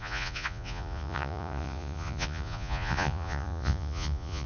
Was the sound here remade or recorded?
remade